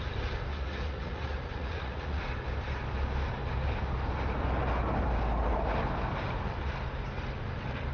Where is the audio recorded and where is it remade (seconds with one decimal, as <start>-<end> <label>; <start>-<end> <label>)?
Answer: 0.0-0.5 recorded; 0.5-2.2 remade; 2.2-7.9 recorded

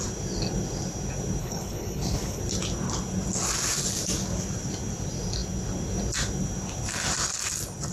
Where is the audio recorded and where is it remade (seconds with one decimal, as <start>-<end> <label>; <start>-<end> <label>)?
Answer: 0.0-1.4 recorded; 1.4-2.4 remade; 2.4-7.9 recorded